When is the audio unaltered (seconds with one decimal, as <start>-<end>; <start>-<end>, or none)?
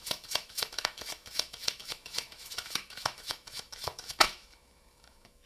none